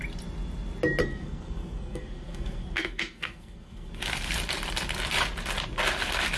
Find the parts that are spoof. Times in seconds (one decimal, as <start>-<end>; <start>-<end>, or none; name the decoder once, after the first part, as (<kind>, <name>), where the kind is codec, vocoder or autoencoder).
1.0-3.9 (codec, SNAC)